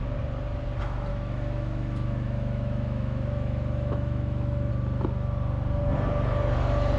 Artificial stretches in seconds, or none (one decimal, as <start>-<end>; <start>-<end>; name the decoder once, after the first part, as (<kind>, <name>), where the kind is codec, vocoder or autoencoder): 1.1-4.7 (autoencoder, DAC-VAE)

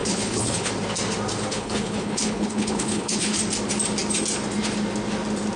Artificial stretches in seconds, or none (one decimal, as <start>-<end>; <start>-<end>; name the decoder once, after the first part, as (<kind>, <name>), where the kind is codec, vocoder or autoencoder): 0.0-0.7 (codec, HILCodec); 1.5-3.4

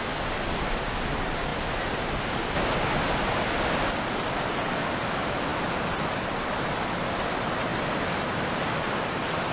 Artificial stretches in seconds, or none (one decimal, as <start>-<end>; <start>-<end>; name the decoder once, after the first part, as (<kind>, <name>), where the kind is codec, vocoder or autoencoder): none

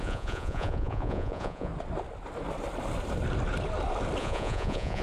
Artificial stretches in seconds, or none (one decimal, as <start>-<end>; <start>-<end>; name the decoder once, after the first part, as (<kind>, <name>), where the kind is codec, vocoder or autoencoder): 0.0-1.7 (vocoder, Vocos); 4.2-5.0